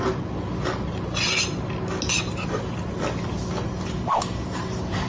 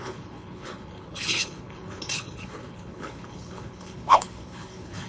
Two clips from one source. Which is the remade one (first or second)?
second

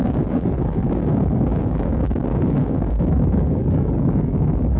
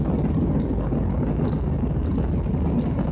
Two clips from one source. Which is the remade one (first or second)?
first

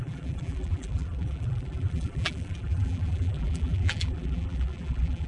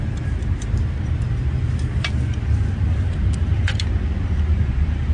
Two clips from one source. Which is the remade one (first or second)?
first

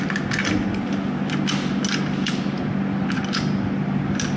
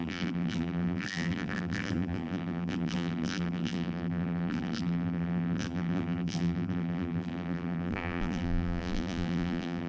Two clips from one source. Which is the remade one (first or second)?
second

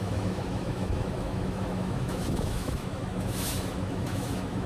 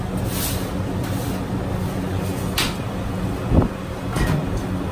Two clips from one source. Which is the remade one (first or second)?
first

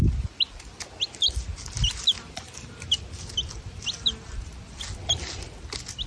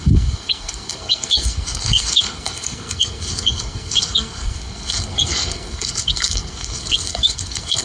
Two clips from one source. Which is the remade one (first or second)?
second